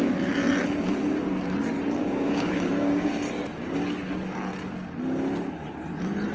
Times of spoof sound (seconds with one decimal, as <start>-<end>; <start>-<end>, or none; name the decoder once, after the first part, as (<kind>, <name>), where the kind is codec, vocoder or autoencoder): 2.0-3.1 (codec, DAC)